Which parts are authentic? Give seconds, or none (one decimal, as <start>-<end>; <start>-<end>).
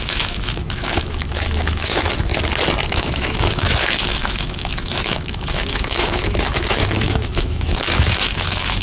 2.3-2.9